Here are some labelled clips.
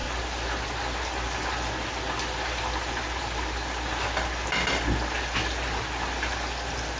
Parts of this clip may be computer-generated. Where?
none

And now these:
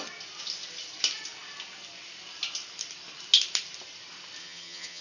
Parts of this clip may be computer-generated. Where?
4.4-5.0

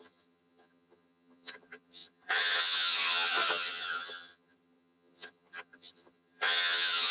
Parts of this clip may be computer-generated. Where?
0.0-7.1

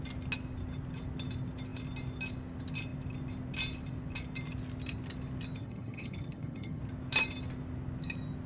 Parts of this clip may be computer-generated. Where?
5.6-6.8

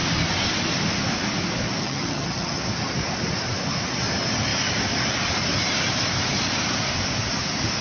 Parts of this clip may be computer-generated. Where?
1.8-2.6